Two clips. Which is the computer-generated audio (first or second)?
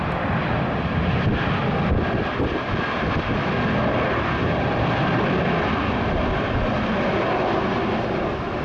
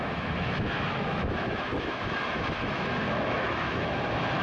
second